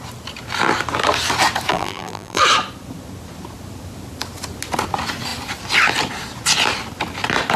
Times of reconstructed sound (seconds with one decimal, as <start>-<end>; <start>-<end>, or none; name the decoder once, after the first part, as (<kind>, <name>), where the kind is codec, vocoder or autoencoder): 1.7-2.4 (vocoder, BigVGAN v2)